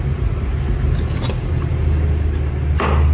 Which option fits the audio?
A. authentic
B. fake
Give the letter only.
A